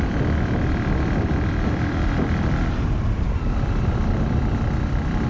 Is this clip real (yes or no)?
no